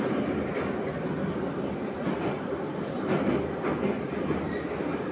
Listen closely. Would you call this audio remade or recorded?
recorded